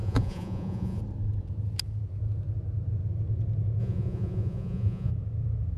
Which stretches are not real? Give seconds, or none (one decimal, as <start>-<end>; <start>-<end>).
0.0-1.0; 3.8-5.1

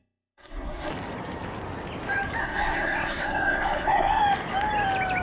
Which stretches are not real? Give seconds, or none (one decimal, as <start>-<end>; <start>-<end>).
0.0-0.9; 2.4-4.2

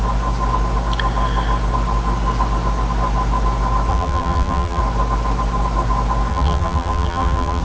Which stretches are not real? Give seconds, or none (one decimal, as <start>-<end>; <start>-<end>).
3.9-4.8; 6.3-7.6

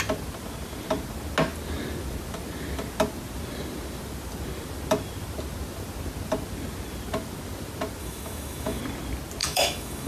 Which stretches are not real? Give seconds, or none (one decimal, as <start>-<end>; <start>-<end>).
8.0-8.8; 9.4-10.1